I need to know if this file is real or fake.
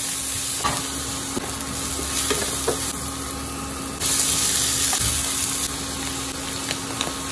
real